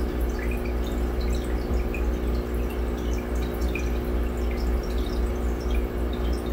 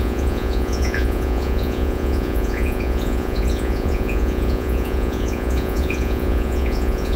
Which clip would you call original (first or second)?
first